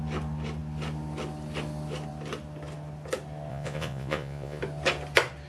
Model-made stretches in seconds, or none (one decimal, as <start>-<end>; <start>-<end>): 3.5-4.6